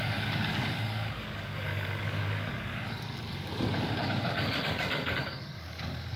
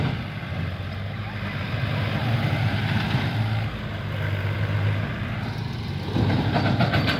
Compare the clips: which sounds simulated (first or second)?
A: first